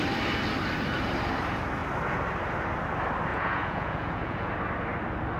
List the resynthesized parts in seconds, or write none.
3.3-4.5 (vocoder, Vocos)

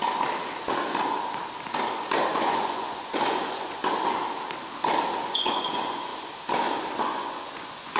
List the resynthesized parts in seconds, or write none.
2.3-3.8 (vocoder, Vocos); 5.2-6.1; 7.0-8.0

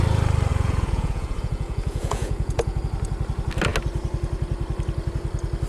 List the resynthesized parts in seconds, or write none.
0.5-2.8 (vocoder, Vocos)

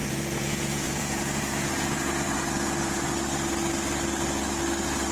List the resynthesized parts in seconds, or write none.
0.0-3.1 (vocoder, Vocos)

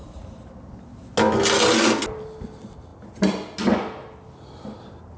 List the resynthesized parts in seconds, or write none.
none